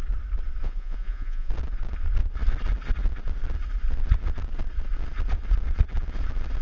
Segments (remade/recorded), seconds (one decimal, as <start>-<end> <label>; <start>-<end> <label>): 0.0-0.6 recorded; 0.6-1.5 remade; 1.5-6.6 recorded